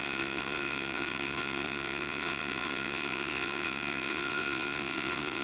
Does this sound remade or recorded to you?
remade